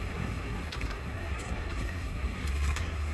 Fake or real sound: fake